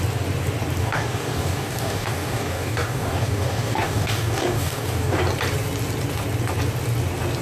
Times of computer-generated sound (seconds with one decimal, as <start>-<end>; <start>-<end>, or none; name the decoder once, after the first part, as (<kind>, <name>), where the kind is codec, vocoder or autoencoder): 0.8-5.2 (codec, DAC)